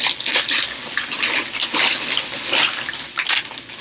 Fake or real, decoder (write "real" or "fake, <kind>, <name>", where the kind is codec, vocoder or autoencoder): real